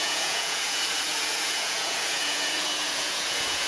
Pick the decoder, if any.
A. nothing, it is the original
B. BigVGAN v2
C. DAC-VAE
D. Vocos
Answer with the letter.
D